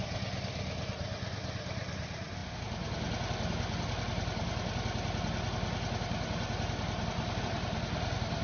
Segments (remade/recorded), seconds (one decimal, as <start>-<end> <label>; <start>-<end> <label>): 0.0-8.4 recorded